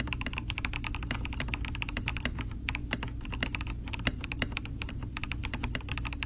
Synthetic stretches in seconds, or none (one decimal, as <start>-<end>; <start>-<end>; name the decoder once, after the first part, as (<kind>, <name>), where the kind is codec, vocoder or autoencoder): 0.0-5.4 (vocoder, BigVGAN v2)